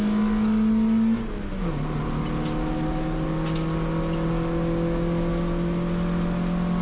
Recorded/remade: recorded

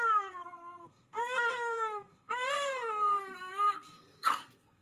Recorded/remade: remade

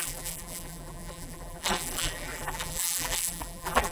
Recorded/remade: remade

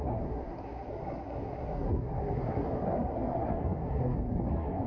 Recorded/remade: remade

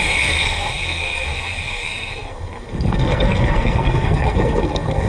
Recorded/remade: remade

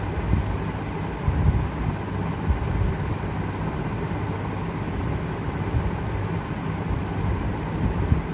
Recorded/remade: recorded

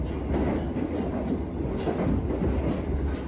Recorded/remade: recorded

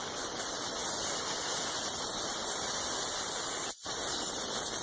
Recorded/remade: recorded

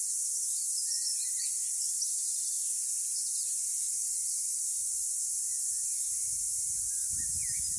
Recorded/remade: recorded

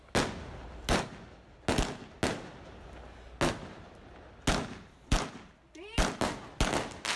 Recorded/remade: recorded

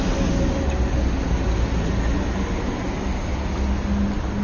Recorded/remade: recorded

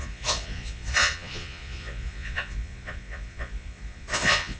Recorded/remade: remade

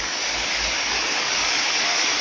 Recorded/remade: remade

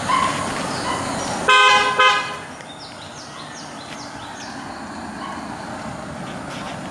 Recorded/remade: recorded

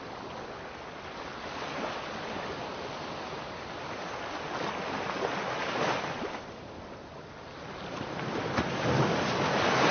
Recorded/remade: recorded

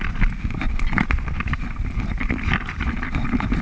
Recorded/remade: recorded